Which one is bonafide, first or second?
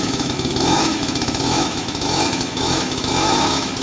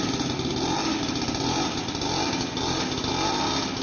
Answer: second